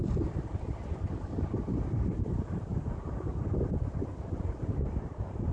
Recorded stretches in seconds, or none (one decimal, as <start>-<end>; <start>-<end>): 0.0-2.7